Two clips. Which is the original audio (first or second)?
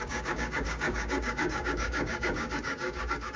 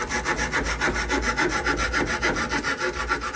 second